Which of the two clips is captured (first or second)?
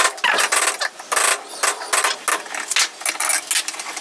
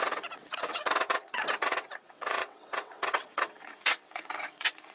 first